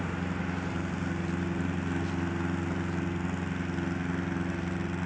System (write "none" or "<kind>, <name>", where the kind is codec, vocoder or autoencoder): none